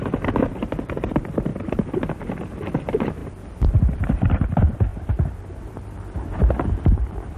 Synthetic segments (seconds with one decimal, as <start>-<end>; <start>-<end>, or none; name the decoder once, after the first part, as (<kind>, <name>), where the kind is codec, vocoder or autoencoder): 0.0-1.5 (vocoder, BigVGAN v2); 2.2-3.2; 3.8-7.4